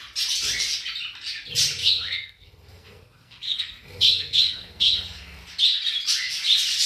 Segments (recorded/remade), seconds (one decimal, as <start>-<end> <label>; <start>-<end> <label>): 0.0-1.8 recorded; 1.8-5.4 remade; 5.4-6.9 recorded